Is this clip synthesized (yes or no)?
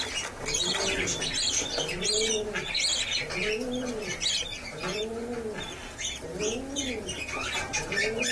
no